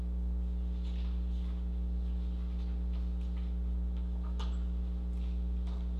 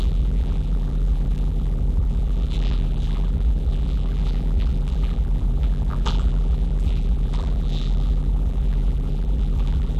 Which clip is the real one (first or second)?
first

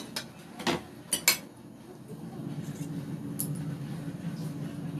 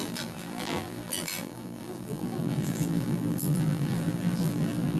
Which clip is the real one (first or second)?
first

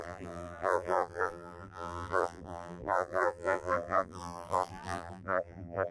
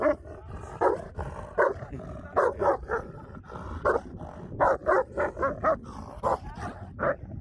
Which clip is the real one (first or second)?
second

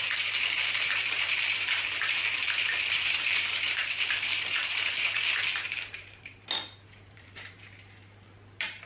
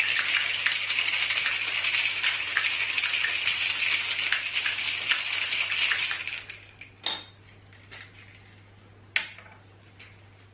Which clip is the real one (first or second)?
second